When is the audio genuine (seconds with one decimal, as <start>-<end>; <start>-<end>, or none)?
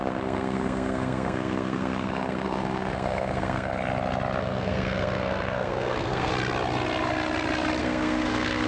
3.7-4.4; 6.3-7.8